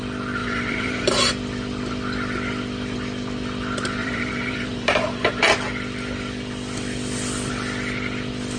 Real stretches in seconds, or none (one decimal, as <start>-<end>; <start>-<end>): 0.0-0.4; 1.3-4.0; 5.4-8.6